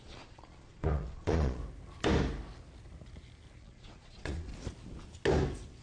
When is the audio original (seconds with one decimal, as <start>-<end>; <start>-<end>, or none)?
1.6-3.6; 4.5-5.8